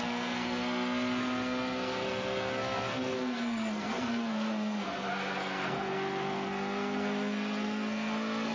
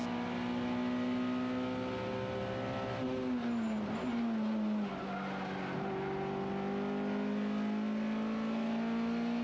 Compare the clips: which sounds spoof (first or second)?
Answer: first